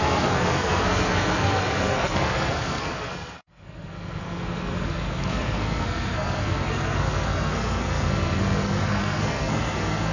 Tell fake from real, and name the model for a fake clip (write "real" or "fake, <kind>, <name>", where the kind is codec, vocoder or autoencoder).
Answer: fake, codec, SNAC